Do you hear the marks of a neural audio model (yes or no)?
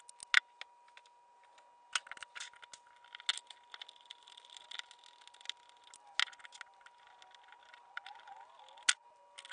no